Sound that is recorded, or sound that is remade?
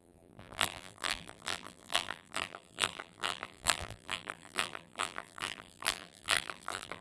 remade